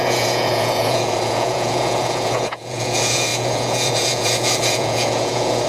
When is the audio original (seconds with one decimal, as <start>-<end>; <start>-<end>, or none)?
none